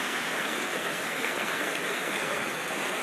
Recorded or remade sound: remade